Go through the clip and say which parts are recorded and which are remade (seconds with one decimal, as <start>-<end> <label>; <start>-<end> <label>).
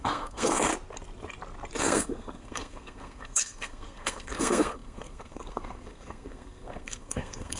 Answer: 0.0-0.7 remade; 0.7-1.8 recorded; 1.8-7.6 remade